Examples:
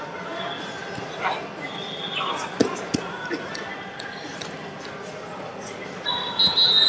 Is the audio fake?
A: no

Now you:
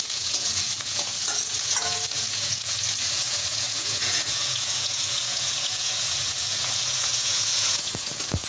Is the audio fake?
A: yes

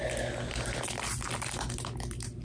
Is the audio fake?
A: no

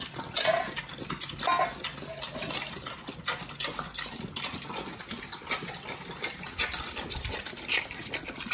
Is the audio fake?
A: no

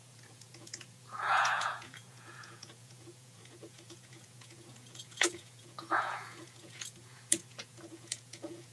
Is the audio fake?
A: yes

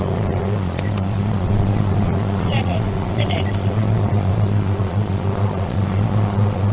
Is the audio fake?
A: yes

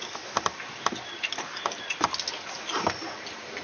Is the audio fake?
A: no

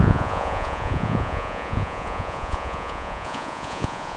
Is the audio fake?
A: yes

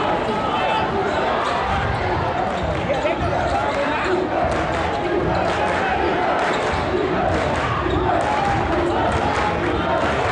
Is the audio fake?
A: no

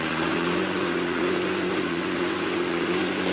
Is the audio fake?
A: yes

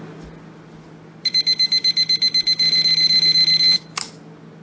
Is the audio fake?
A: no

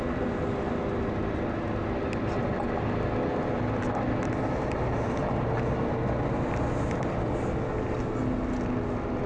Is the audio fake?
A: no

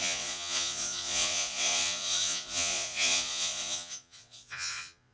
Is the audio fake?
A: yes